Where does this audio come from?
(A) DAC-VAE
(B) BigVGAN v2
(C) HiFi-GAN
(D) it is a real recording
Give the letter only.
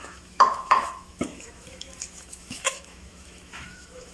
A